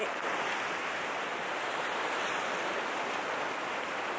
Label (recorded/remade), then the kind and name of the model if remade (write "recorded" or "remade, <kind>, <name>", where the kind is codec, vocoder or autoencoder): recorded